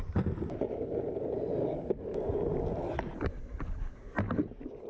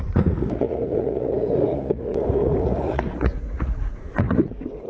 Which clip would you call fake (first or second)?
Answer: second